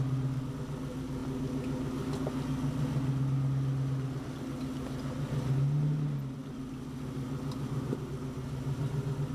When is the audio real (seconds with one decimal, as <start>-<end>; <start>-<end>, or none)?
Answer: 0.0-9.3